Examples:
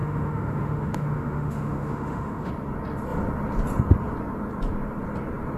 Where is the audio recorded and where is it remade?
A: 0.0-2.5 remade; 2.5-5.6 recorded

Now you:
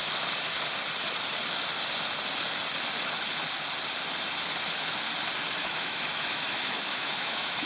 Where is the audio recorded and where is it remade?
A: 0.0-5.6 recorded; 5.6-7.7 remade

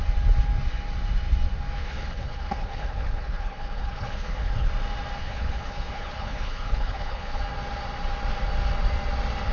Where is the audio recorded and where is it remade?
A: 0.0-1.8 recorded; 1.8-4.7 remade; 4.7-5.2 recorded; 5.2-7.4 remade; 7.4-9.5 recorded

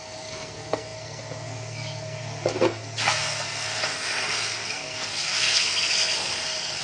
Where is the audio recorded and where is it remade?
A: 0.0-6.8 remade

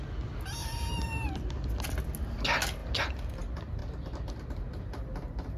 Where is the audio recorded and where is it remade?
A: 0.0-0.6 recorded; 0.6-1.3 remade; 1.3-5.6 recorded

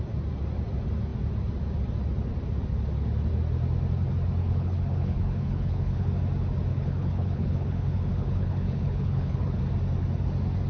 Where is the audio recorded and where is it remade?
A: 0.0-4.4 recorded; 4.4-6.1 remade; 6.1-6.7 recorded; 6.7-9.6 remade; 9.6-10.7 recorded

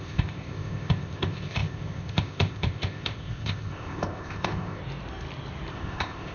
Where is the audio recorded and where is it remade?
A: 0.0-4.8 remade; 4.8-5.7 recorded; 5.7-6.3 remade